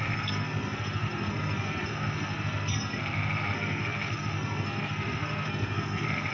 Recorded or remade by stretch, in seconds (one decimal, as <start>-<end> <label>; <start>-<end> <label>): 0.0-6.3 remade